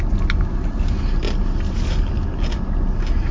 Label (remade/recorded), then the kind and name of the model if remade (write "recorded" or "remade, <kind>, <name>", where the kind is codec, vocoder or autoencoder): recorded